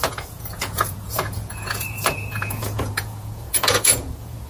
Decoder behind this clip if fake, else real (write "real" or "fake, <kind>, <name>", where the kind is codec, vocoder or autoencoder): fake, vocoder, Vocos